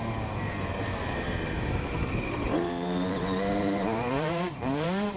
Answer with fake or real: fake